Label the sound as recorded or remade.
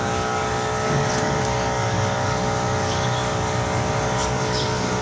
remade